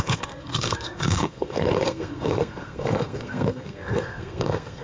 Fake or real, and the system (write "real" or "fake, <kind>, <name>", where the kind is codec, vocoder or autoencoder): fake, codec, SNAC